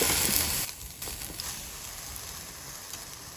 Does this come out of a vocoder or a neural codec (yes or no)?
no